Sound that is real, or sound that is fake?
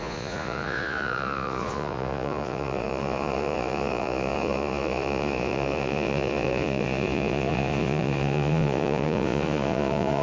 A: fake